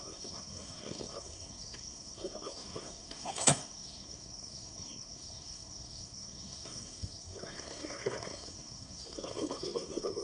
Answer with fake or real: fake